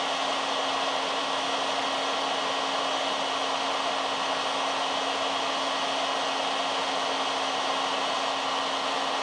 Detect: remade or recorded recorded